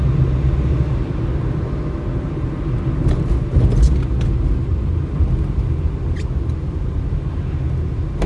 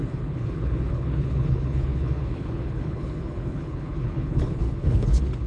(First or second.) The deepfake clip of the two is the second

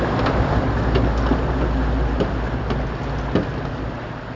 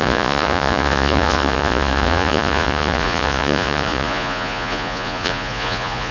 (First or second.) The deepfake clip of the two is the second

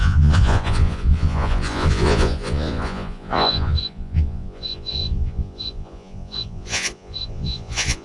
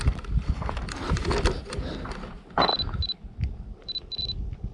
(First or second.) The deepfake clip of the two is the first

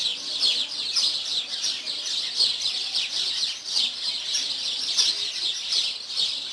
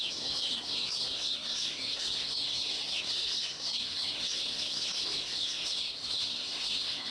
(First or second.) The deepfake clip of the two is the second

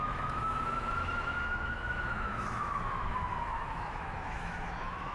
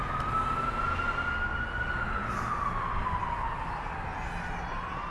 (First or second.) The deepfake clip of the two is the first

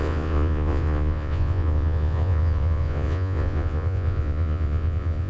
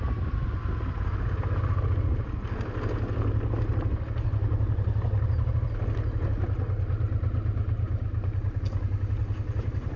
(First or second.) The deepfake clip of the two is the first